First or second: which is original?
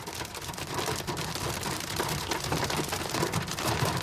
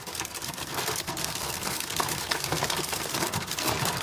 first